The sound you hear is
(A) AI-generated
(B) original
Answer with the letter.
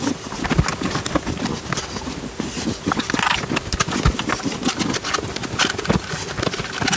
B